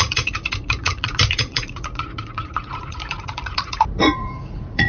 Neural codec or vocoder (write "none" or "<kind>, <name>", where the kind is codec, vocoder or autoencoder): vocoder, Vocos